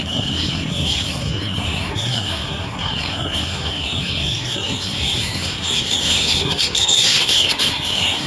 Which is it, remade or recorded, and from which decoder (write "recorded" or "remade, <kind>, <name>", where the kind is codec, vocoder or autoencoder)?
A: remade, codec, SNAC